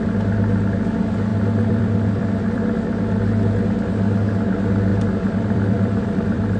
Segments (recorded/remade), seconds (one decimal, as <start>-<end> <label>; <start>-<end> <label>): 0.0-1.3 recorded; 1.3-3.6 remade; 3.6-4.9 recorded; 4.9-6.6 remade